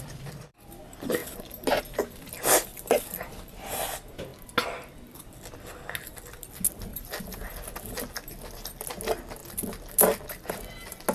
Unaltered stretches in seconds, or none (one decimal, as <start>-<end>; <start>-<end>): 0.0-1.2; 1.8-6.9; 7.5-11.1